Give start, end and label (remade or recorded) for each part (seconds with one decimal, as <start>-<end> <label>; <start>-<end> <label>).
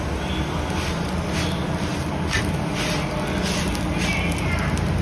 0.0-5.0 recorded